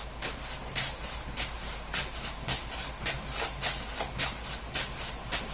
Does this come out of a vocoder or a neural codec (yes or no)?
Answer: no